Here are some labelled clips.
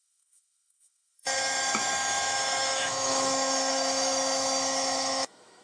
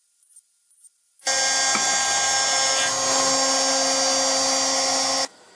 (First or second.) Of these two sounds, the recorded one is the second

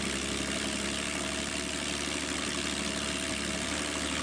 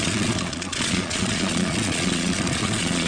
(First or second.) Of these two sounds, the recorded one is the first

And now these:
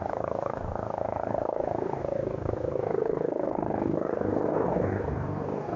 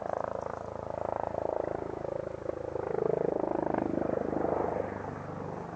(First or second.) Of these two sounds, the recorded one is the second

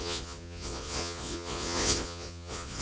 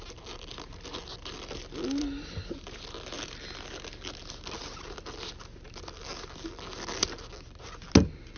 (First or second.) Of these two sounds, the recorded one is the second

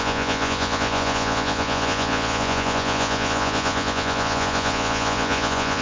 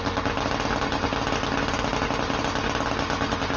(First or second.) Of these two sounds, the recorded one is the second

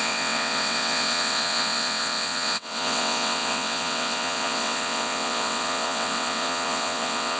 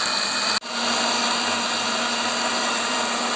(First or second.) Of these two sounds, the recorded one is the second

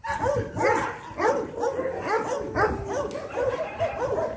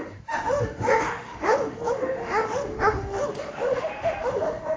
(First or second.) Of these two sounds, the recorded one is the first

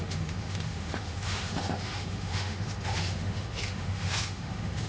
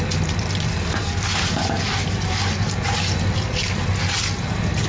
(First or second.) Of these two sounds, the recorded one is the second